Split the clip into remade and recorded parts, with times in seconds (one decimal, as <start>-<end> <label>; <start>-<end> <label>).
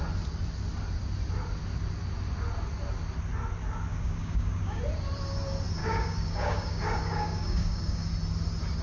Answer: 0.0-3.9 recorded; 3.9-4.8 remade; 4.8-5.8 recorded; 5.8-8.1 remade; 8.1-8.8 recorded